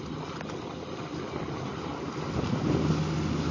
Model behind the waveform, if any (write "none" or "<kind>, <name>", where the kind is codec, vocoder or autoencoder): none